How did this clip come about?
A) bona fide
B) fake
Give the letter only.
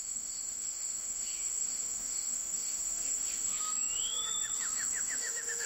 B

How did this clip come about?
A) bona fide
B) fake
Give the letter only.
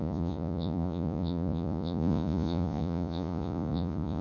B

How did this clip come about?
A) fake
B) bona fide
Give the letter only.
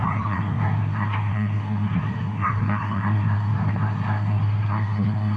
A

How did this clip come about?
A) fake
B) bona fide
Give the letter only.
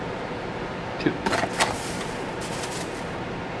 B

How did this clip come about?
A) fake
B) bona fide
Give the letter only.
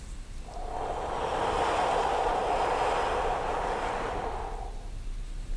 B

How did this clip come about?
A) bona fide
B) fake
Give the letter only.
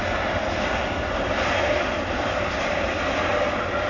A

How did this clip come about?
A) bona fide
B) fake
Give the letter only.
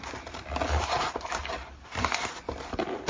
A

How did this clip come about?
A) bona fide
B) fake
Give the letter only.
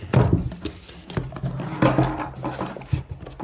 A